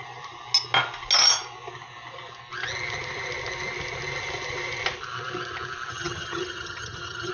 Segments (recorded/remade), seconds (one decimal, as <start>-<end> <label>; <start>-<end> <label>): 0.0-5.9 recorded; 5.9-7.3 remade